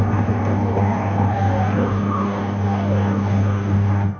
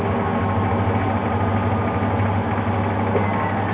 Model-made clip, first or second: first